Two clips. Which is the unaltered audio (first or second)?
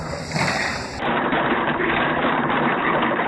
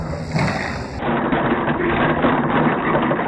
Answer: second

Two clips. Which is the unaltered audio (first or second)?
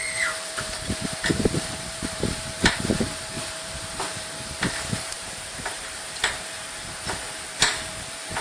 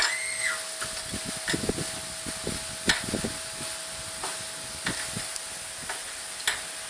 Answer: second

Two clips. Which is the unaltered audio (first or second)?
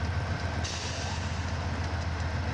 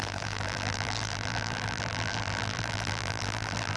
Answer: first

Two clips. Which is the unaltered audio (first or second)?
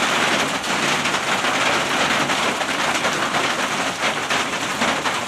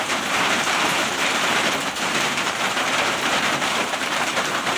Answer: first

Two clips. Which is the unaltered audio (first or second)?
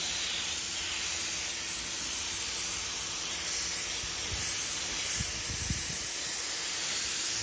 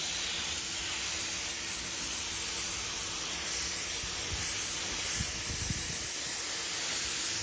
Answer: first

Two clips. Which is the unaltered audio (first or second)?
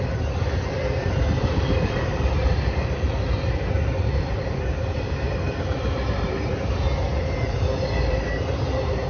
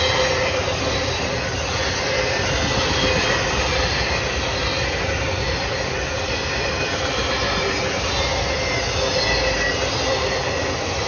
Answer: second